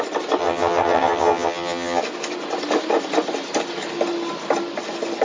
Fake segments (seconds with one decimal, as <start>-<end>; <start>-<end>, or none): 0.4-2.0